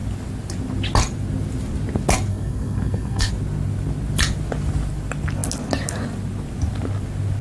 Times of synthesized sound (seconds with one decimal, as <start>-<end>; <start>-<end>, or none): 2.3-3.3